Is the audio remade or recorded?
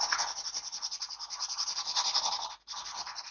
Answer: recorded